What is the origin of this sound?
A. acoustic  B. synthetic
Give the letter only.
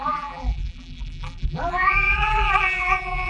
B